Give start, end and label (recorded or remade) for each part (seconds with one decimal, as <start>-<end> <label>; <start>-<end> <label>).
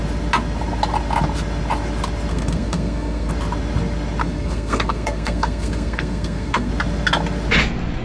0.0-2.3 recorded; 2.3-3.3 remade; 3.3-4.2 recorded; 4.2-6.7 remade; 6.7-8.0 recorded